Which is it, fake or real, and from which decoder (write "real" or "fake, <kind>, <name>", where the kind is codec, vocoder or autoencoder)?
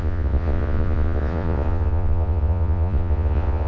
fake, vocoder, Vocos